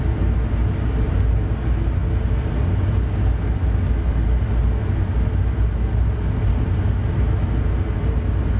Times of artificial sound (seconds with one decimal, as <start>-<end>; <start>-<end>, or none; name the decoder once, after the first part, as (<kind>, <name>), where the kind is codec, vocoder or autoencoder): none